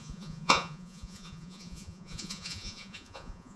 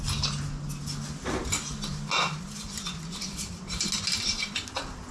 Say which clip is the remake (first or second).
first